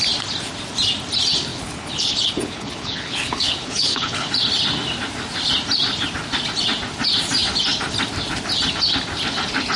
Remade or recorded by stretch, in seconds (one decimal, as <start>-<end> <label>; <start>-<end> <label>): 0.0-1.5 recorded; 1.5-4.3 remade; 4.3-9.8 recorded